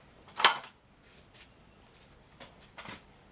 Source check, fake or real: real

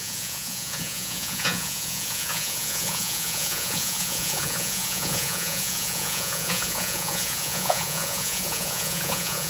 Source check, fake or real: fake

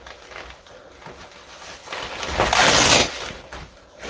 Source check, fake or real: real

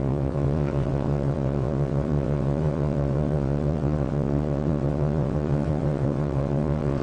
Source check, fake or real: fake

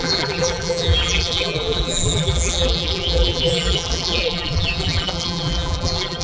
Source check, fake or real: fake